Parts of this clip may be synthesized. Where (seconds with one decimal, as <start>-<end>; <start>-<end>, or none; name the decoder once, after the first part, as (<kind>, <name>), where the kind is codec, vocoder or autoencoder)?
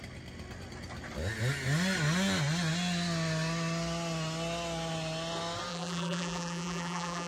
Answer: 5.7-7.3 (vocoder, BigVGAN v2)